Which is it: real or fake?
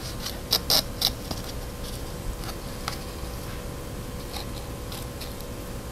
real